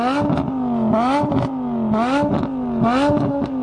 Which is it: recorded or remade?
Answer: recorded